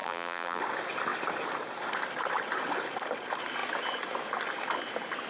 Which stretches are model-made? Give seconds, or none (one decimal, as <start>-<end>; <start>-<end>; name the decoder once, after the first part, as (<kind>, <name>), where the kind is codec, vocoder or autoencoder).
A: 0.0-0.6 (vocoder, BigVGAN v2)